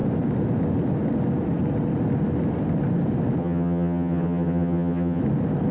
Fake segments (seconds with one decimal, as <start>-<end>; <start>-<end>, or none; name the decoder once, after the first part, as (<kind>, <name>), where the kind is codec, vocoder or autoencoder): 3.4-5.2 (vocoder, HiFi-GAN)